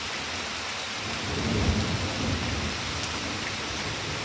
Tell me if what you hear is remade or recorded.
recorded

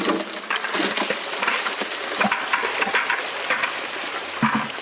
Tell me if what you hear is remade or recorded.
recorded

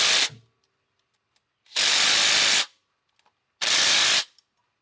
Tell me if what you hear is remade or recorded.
recorded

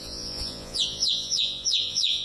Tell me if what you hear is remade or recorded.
remade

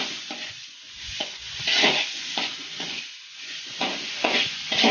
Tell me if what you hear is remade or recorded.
remade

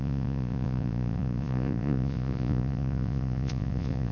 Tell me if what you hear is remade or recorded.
remade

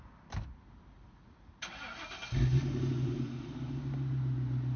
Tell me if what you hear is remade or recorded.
recorded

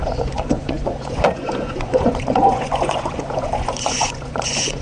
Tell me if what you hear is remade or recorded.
remade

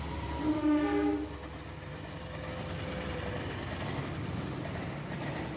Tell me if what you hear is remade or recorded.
recorded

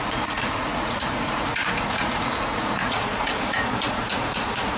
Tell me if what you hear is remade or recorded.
remade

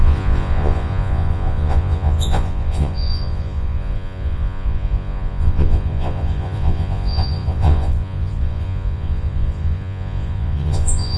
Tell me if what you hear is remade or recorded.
remade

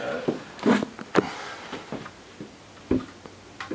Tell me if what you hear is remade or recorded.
recorded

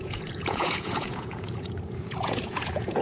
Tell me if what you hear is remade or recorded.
remade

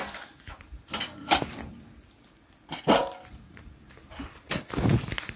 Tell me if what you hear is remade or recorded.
recorded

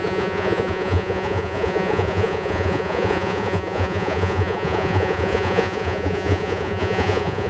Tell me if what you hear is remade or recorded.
remade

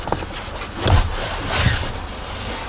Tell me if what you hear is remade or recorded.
recorded